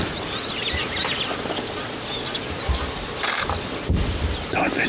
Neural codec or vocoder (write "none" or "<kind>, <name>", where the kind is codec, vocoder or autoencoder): none